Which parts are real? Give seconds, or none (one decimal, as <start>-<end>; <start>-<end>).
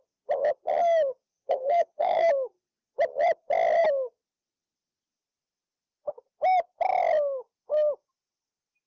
0.0-1.3; 2.3-8.9